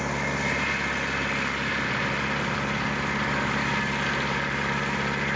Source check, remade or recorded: recorded